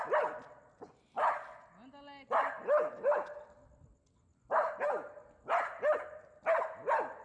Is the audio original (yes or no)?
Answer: yes